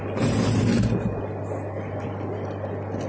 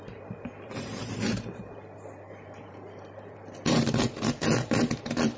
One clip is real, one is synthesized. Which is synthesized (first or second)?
second